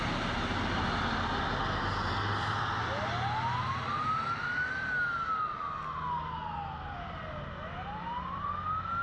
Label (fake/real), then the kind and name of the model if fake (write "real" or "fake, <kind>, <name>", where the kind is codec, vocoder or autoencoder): real